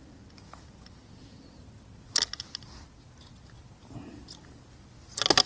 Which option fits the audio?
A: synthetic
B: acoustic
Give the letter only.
B